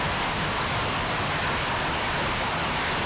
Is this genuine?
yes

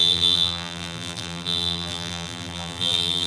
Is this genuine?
no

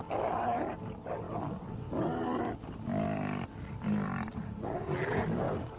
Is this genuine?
yes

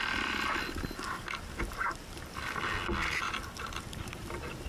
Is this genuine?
yes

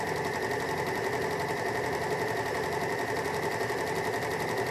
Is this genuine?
no